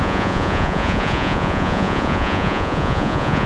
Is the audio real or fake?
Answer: fake